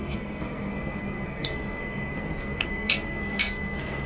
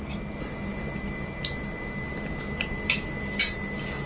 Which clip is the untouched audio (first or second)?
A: second